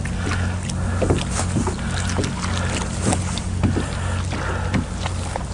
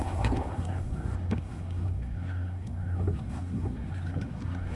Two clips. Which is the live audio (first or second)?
first